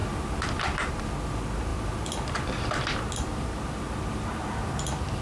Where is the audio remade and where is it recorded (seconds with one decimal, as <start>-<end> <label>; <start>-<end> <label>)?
0.0-1.7 recorded; 1.7-3.0 remade; 3.0-5.2 recorded